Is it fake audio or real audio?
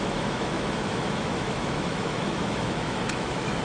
fake